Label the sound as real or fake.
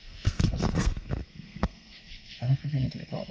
fake